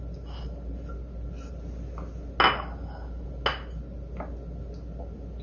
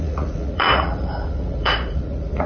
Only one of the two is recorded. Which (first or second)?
first